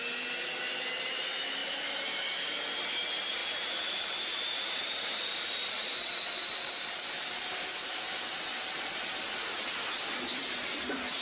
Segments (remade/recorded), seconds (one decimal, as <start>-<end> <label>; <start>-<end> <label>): 0.0-1.6 recorded; 1.6-2.2 remade; 2.2-3.4 recorded; 3.4-8.3 remade; 8.3-11.2 recorded